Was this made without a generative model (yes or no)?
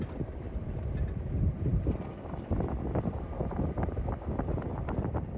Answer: no